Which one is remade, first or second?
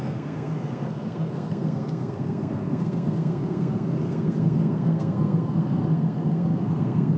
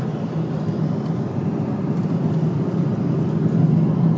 first